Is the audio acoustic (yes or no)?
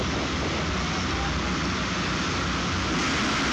yes